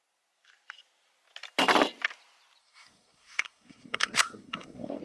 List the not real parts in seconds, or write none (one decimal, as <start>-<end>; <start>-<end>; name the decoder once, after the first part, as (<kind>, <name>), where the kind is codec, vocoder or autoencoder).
2.6-5.0 (codec, SNAC)